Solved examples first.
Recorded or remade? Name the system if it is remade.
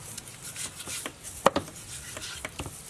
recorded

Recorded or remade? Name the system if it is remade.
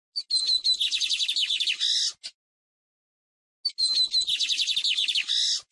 recorded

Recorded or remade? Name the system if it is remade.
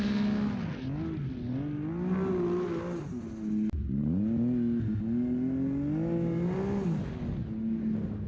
recorded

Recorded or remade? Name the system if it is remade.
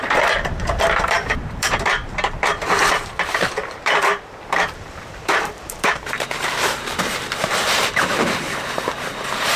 remade, vocoder, BigVGAN v2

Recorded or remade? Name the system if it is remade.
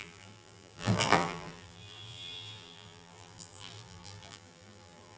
remade, vocoder, BigVGAN v2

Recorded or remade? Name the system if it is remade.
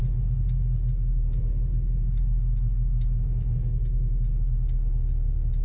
recorded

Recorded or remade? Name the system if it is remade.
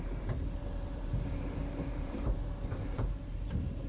remade, vocoder, BigVGAN v2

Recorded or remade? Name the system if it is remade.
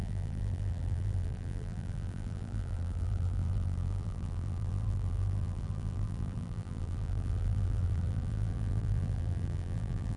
remade, vocoder, BigVGAN v2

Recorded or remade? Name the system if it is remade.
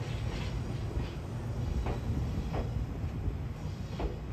recorded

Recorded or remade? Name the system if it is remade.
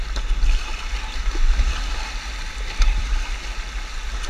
recorded